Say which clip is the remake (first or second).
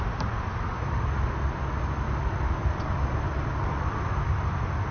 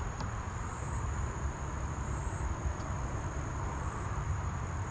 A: second